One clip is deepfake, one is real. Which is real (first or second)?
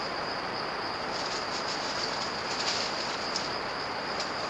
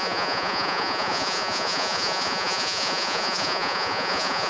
first